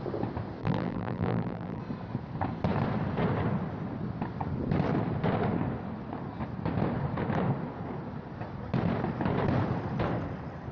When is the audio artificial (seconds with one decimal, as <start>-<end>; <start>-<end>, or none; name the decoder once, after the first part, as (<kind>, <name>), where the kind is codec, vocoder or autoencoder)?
0.6-1.8 (vocoder, BigVGAN v2)